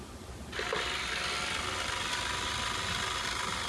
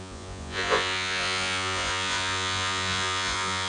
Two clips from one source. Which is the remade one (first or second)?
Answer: second